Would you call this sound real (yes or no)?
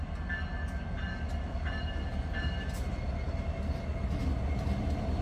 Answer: yes